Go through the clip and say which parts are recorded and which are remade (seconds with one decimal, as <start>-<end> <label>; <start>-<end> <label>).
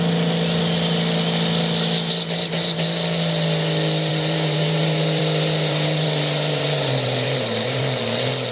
0.0-4.1 recorded; 4.1-7.8 remade; 7.8-8.5 recorded